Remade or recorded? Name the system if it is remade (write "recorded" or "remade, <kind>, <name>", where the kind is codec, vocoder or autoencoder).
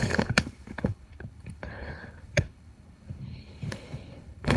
remade, codec, HILCodec